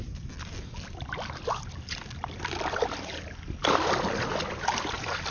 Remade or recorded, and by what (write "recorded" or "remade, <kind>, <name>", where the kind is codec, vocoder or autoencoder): remade, vocoder, BigVGAN v2